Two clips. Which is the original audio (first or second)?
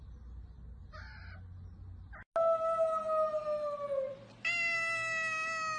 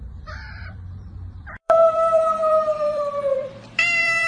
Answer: first